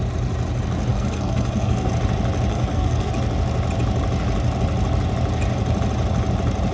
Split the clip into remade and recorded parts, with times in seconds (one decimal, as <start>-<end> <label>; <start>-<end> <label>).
0.0-0.9 recorded; 0.9-1.9 remade; 1.9-2.5 recorded; 2.5-3.1 remade; 3.1-6.7 recorded